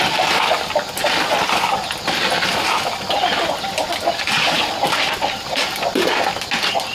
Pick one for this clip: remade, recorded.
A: recorded